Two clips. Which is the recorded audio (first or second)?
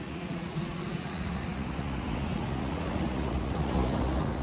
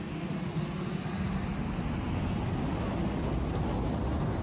second